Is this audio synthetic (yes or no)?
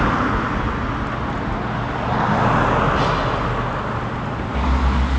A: no